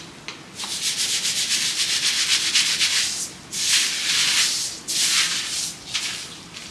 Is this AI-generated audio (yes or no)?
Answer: no